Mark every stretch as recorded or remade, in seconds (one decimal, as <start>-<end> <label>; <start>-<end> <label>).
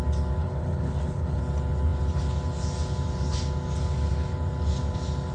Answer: 0.0-0.4 recorded; 0.4-1.4 remade; 1.4-5.3 recorded